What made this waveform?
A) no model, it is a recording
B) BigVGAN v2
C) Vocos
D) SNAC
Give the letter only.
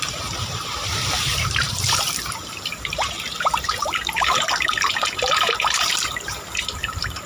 B